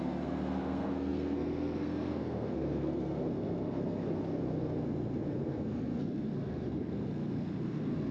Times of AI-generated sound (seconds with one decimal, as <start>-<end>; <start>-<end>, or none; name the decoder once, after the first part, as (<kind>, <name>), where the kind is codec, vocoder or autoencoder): 0.0-8.1 (codec, SNAC)